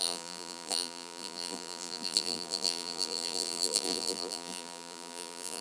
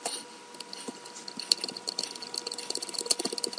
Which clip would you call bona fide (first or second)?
second